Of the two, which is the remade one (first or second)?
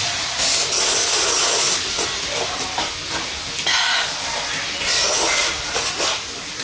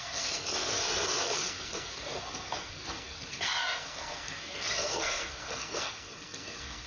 second